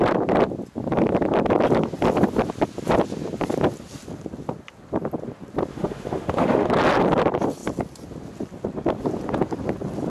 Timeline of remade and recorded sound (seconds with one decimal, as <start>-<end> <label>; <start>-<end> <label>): 0.0-5.7 recorded; 5.7-6.7 remade; 6.7-10.1 recorded